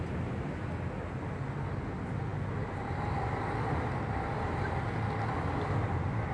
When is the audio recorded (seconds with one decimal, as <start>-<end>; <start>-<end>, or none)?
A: 0.0-6.3